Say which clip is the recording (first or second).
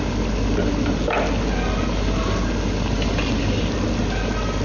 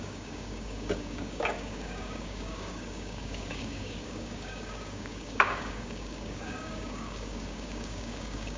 first